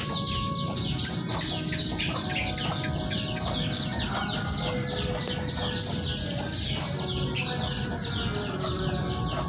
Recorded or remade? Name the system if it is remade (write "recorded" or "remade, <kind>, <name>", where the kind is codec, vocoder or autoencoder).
recorded